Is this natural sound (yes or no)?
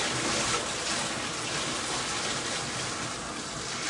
yes